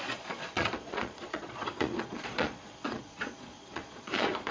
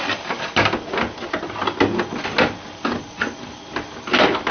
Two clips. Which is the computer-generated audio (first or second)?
first